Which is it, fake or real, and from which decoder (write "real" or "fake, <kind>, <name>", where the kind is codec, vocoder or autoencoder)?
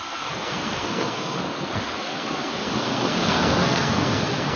fake, codec, SNAC